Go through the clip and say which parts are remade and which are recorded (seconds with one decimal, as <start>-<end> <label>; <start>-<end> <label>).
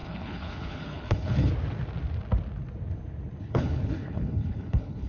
0.0-1.5 remade; 1.5-3.4 recorded; 3.4-5.1 remade